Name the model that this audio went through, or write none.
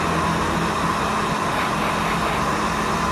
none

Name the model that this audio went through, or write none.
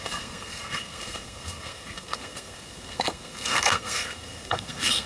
codec, SNAC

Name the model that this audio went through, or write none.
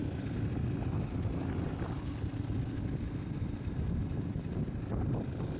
none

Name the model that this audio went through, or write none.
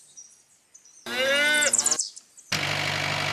none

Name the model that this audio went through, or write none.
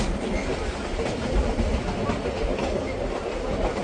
none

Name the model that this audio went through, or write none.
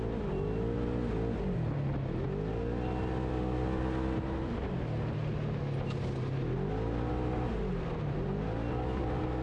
none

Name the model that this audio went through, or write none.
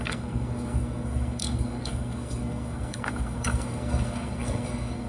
codec, SNAC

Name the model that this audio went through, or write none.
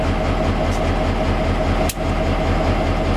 none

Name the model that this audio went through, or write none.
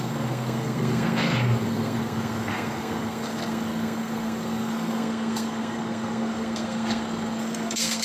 codec, SNAC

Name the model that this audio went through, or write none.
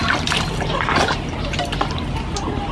none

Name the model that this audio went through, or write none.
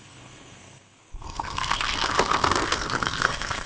codec, SNAC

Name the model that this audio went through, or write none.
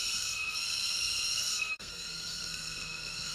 codec, SNAC